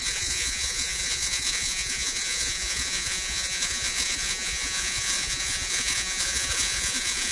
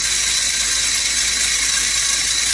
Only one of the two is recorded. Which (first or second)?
second